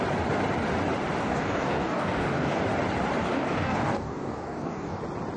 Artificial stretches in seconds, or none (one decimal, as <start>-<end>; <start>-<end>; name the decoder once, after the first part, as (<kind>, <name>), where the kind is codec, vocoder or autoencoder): 1.2-2.6 (codec, DAC); 3.2-5.0